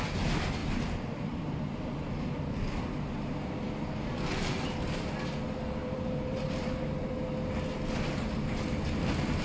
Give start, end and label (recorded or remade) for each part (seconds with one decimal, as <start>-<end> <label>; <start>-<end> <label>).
0.0-0.6 recorded; 0.6-1.6 remade; 1.6-5.8 recorded; 5.8-7.1 remade; 7.1-9.4 recorded